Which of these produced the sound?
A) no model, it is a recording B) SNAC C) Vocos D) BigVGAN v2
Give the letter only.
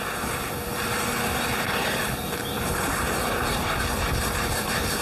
A